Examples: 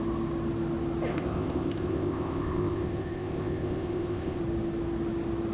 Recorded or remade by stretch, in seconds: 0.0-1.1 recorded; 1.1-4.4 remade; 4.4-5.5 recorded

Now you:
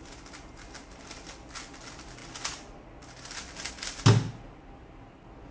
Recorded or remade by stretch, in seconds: 0.0-5.5 recorded